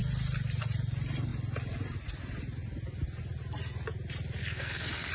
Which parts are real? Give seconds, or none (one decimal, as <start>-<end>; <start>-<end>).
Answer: 0.0-4.4